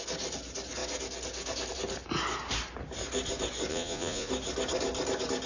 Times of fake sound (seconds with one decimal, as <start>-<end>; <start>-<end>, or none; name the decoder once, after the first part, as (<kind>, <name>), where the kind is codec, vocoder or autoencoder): 3.7-4.3 (vocoder, Vocos)